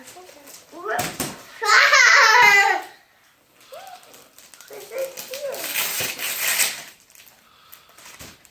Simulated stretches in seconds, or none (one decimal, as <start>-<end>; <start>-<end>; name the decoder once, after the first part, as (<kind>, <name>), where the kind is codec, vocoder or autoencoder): 0.0-8.5 (vocoder, BigVGAN v2)